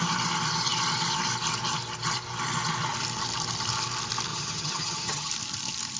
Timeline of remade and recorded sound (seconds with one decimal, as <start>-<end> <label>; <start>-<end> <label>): 0.0-4.3 recorded; 4.3-5.3 remade; 5.3-6.0 recorded